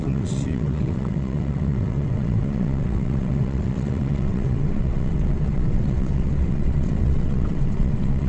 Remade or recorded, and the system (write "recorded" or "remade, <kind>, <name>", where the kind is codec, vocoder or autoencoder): remade, vocoder, WaveNeXt